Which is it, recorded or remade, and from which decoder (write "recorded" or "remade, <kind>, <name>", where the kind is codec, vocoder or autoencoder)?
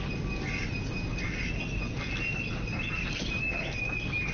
recorded